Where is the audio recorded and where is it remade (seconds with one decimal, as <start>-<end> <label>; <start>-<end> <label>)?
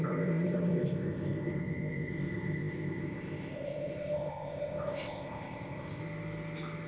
0.0-6.0 remade; 6.0-6.9 recorded